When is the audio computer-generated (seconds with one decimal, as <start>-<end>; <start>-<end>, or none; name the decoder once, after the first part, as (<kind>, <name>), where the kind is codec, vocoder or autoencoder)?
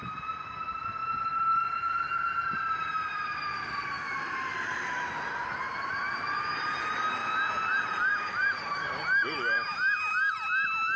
0.0-1.0 (vocoder, BigVGAN v2); 2.0-2.9; 5.5-7.2; 7.8-11.0